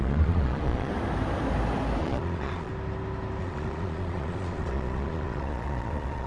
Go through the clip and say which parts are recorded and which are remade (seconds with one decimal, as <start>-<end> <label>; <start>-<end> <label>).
0.0-0.9 remade; 0.9-2.0 recorded; 2.0-2.7 remade; 2.7-3.4 recorded; 3.4-6.3 remade